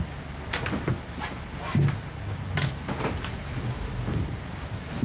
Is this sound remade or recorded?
recorded